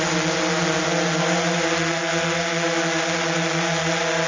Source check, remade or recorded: recorded